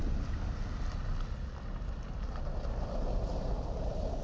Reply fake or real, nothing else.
real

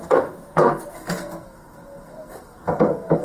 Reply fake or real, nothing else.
fake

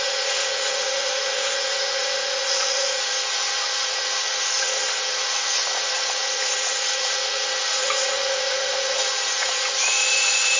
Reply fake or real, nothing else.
fake